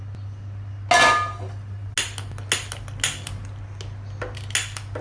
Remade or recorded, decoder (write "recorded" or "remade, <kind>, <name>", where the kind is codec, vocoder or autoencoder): recorded